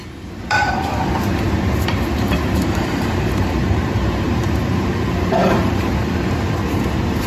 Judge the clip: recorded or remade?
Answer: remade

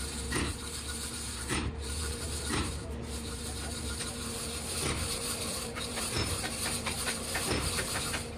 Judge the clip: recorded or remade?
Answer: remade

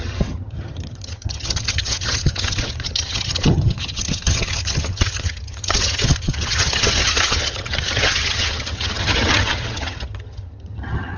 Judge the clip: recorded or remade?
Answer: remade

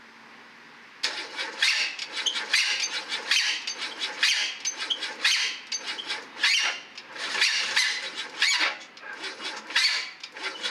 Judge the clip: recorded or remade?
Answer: recorded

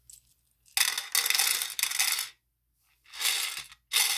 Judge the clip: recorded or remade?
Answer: recorded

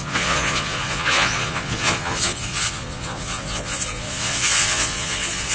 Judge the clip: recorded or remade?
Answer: remade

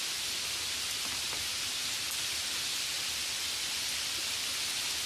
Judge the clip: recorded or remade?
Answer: recorded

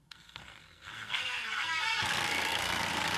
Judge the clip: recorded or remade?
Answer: remade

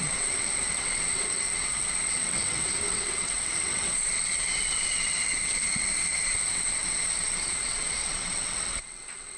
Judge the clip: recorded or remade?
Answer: remade